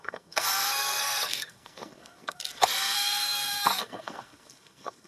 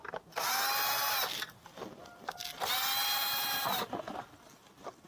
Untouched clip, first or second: second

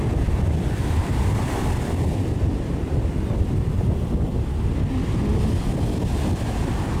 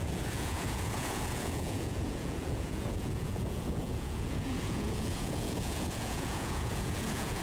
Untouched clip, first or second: first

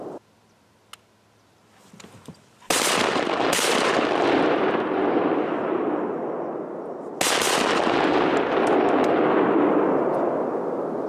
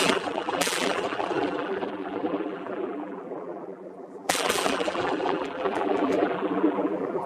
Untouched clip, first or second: first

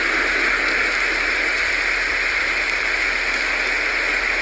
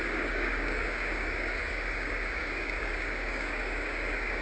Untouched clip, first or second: first